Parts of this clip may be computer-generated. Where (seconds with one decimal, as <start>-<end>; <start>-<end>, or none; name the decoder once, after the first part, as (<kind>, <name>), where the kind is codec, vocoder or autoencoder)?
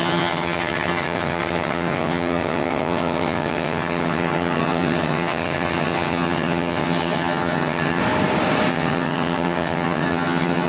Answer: 0.0-8.0 (vocoder, HiFi-GAN); 8.7-10.7